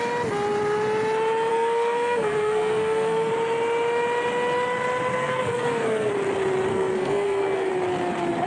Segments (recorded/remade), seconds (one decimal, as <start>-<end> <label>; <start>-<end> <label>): 0.0-1.5 recorded; 1.5-3.3 remade; 3.3-5.1 recorded; 5.1-6.1 remade; 6.1-6.7 recorded; 6.7-7.7 remade; 7.7-8.5 recorded